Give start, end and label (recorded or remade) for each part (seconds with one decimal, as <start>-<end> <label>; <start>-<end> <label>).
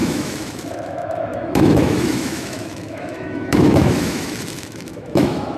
0.0-5.6 remade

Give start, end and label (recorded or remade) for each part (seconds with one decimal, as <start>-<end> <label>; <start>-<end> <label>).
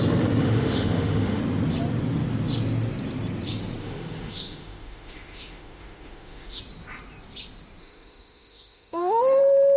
0.0-0.4 recorded; 0.4-1.4 remade; 1.4-3.8 recorded; 3.8-6.6 remade; 6.6-7.8 recorded; 7.8-9.4 remade; 9.4-9.8 recorded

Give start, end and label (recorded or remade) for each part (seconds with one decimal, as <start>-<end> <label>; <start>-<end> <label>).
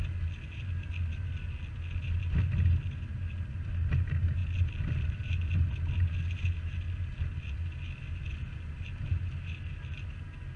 0.0-10.6 recorded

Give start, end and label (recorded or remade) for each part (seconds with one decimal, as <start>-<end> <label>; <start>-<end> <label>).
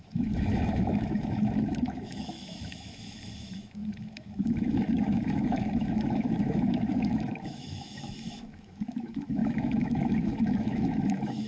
0.0-11.5 remade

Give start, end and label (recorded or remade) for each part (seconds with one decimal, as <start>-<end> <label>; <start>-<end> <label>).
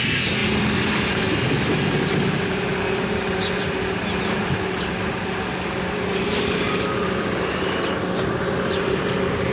0.0-9.5 recorded